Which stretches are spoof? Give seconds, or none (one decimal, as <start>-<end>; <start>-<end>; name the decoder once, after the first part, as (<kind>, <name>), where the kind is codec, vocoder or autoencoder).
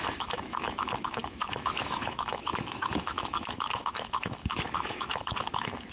0.0-5.9 (autoencoder, DAC-VAE)